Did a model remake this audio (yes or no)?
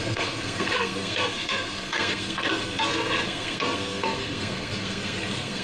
yes